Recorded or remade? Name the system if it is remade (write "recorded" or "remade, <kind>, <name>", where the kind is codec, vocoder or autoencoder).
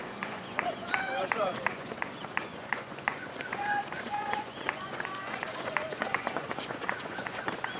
remade, vocoder, Vocos